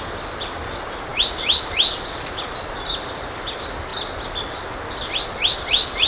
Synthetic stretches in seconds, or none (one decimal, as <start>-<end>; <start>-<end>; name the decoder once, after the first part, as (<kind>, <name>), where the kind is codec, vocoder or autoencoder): none